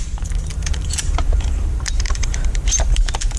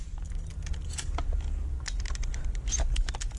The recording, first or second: second